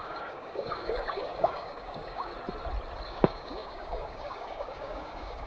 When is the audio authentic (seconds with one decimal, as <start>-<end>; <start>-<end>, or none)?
2.3-3.1